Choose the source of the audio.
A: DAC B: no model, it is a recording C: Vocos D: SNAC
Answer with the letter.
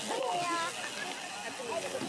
B